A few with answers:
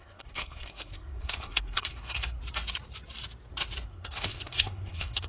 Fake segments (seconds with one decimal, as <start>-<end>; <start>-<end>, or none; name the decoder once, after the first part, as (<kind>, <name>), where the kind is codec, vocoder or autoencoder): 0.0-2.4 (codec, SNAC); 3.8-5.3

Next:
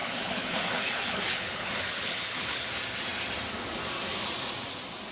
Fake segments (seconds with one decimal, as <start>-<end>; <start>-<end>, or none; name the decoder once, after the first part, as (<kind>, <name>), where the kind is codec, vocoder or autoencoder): 0.0-2.7 (codec, HILCodec)

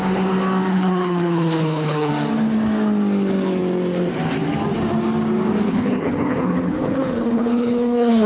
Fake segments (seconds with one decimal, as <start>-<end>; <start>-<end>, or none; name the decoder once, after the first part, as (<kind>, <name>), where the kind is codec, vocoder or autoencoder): 0.7-2.1 (codec, HILCodec); 5.7-8.3

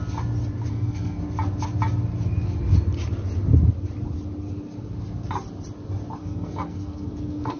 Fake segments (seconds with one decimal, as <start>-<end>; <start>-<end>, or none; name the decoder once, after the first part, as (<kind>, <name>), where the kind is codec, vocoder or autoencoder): 0.7-1.2 (codec, SNAC); 6.2-7.6

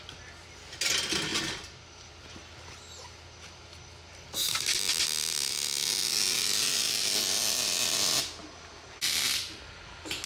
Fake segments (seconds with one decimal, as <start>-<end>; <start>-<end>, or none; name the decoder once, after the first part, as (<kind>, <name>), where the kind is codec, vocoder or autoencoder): 1.3-2.1 (vocoder, BigVGAN v2); 8.4-9.6

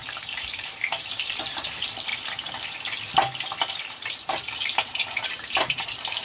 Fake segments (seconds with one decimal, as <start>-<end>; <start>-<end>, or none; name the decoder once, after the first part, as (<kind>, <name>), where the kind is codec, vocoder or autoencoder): 0.0-2.1 (vocoder, BigVGAN v2); 3.8-6.2

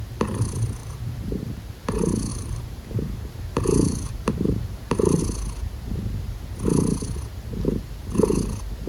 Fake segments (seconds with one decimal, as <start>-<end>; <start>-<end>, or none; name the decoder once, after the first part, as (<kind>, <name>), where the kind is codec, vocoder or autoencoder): 0.8-1.6 (vocoder, BigVGAN v2); 2.3-5.2

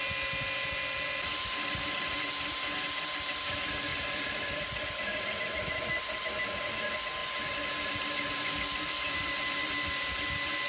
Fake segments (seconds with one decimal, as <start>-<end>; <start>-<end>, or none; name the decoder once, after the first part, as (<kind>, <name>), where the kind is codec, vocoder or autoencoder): 3.9-4.6 (vocoder, BigVGAN v2)